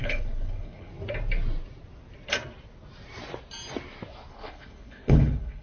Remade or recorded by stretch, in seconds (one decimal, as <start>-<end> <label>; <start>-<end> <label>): 0.0-0.9 remade; 0.9-4.3 recorded; 4.3-5.6 remade